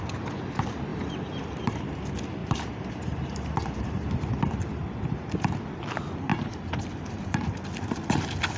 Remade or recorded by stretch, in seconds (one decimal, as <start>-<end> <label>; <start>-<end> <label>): 0.0-0.9 recorded; 0.9-1.8 remade; 1.8-2.4 recorded; 2.4-4.1 remade; 4.1-6.3 recorded; 6.3-7.5 remade; 7.5-8.6 recorded